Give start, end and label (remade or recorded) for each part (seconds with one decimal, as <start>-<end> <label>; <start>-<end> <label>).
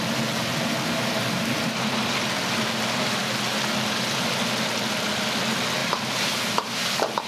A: 0.0-5.8 recorded; 5.8-7.3 remade